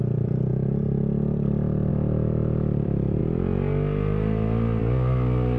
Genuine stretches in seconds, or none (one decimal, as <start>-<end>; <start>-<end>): 0.5-1.9; 3.2-4.8